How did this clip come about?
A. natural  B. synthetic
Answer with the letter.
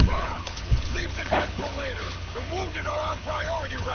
B